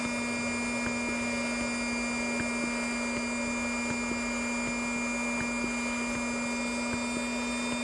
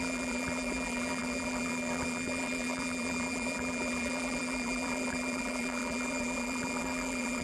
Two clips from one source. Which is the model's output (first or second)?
second